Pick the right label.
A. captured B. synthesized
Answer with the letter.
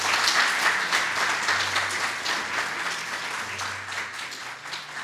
A